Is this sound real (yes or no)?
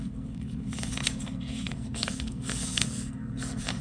no